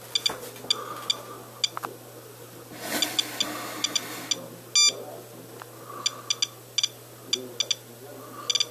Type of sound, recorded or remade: recorded